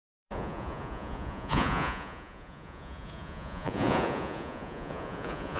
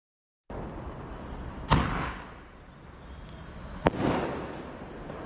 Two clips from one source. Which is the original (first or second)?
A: second